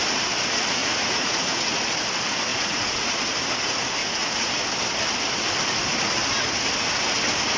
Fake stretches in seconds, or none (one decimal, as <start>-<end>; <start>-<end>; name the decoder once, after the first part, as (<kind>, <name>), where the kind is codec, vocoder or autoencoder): 0.8-1.8 (vocoder, Vocos); 2.5-3.2; 4.0-4.5